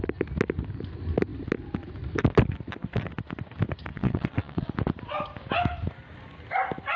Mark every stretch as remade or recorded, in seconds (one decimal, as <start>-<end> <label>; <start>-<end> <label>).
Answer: 0.0-3.9 recorded; 3.9-4.7 remade; 4.7-7.0 recorded